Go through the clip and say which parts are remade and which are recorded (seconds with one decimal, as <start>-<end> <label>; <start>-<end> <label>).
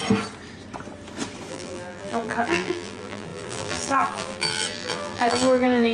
0.0-1.5 recorded; 1.5-5.9 remade